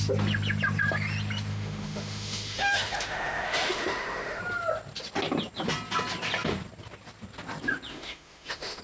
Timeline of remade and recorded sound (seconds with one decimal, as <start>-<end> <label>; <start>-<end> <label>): 0.0-1.5 recorded; 1.5-4.4 remade; 4.4-7.9 recorded; 7.9-8.8 remade